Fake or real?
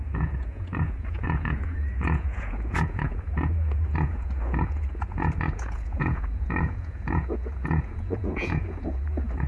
fake